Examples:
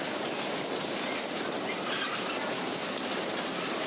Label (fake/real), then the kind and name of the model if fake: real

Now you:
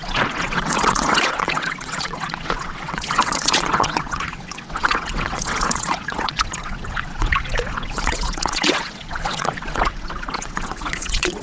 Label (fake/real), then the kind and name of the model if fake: fake, vocoder, WaveNeXt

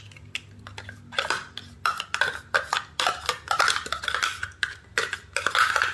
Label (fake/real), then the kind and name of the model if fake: real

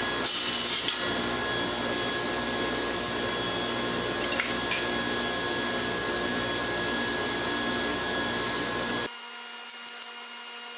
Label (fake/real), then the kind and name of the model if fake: real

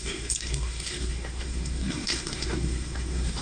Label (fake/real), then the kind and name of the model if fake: fake, codec, SNAC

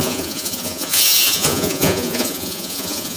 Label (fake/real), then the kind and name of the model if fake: fake, vocoder, Vocos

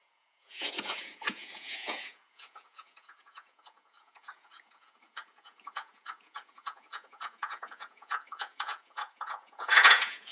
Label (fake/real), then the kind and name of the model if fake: fake, vocoder, Vocos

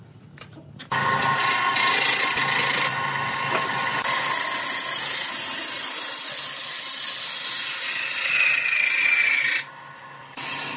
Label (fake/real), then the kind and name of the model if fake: real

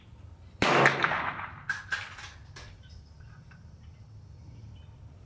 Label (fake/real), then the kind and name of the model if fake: real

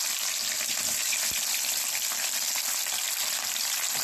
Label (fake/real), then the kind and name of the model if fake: real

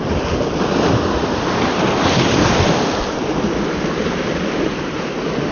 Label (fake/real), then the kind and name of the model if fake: real